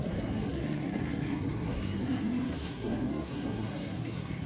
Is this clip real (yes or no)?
no